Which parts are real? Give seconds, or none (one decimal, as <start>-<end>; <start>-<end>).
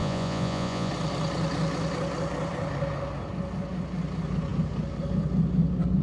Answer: 0.9-6.0